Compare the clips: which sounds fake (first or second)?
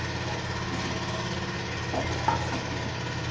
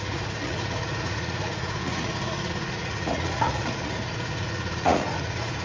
second